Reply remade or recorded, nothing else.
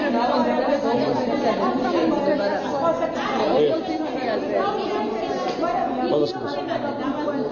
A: recorded